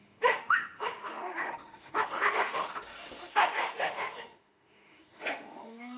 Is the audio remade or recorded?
remade